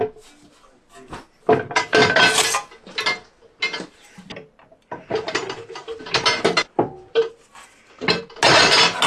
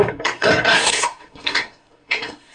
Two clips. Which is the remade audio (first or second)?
second